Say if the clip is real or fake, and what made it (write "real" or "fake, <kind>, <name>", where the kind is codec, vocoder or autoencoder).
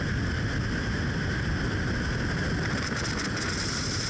real